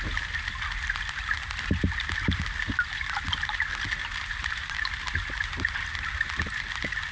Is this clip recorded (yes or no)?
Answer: yes